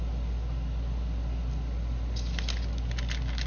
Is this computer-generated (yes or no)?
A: no